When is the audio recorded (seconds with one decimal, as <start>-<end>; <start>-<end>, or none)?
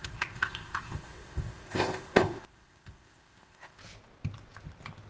3.8-5.1